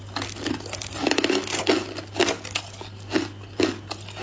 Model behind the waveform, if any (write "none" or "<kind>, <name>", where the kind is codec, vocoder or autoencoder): none